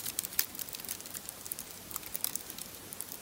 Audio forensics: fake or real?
fake